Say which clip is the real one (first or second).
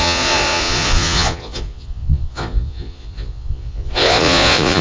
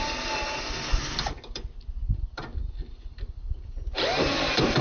second